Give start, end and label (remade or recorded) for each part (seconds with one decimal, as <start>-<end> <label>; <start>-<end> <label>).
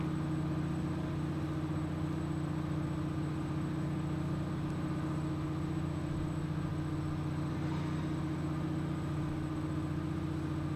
0.0-10.8 recorded